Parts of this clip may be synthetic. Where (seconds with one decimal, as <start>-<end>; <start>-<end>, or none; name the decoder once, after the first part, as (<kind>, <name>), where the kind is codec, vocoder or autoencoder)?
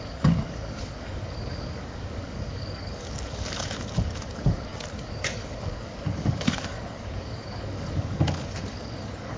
0.0-9.4 (codec, DAC)